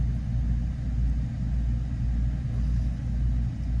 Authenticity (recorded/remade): recorded